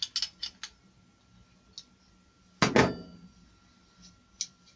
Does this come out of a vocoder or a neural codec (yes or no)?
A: no